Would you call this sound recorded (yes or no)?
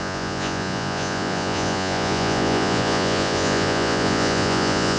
no